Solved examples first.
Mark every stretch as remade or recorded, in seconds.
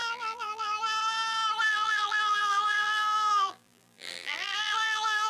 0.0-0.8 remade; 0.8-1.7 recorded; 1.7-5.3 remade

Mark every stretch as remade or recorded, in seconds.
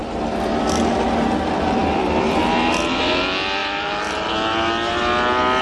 0.0-0.6 remade; 0.6-1.8 recorded; 1.8-2.4 remade; 2.4-5.6 recorded